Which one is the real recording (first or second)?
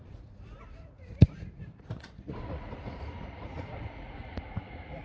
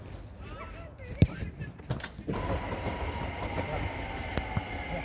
second